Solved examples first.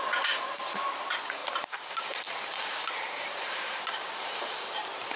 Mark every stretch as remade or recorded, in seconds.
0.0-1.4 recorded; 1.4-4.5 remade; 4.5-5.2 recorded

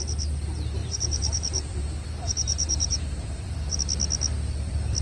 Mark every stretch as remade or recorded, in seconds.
0.0-0.8 recorded; 0.8-3.8 remade; 3.8-5.0 recorded